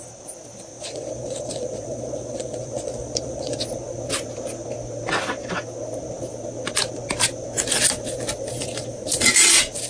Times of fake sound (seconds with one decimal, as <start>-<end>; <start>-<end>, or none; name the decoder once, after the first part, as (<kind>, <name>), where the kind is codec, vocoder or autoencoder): 0.7-3.6 (vocoder, Vocos)